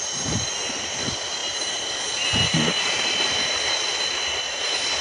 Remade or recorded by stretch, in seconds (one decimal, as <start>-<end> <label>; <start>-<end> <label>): 0.0-5.0 recorded